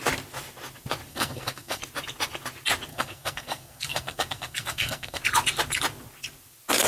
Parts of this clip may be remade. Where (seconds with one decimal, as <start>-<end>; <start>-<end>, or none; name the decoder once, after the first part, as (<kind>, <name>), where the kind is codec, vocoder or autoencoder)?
1.1-1.8 (codec, SNAC); 2.9-5.2